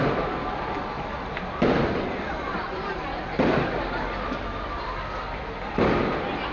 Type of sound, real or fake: real